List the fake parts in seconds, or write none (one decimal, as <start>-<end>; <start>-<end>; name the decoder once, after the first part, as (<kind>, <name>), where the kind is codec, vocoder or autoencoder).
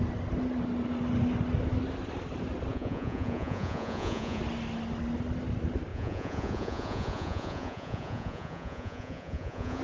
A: 2.7-4.4 (vocoder, Vocos); 5.9-9.8